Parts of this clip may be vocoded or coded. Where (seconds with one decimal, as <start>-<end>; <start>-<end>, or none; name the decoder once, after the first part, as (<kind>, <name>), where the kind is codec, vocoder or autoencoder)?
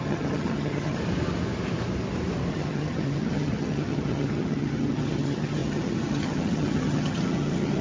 0.0-1.0 (vocoder, HiFi-GAN); 2.5-7.8